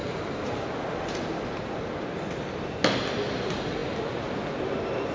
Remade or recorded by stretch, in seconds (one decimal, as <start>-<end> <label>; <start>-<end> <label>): 0.0-5.1 recorded